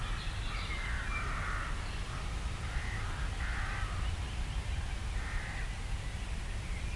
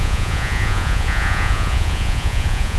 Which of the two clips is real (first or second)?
first